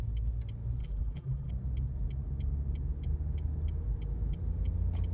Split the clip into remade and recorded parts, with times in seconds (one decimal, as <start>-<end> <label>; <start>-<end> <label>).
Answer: 0.0-0.8 recorded; 0.8-1.5 remade; 1.5-5.1 recorded